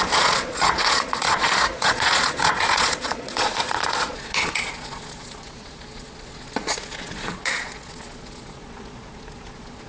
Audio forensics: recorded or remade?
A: remade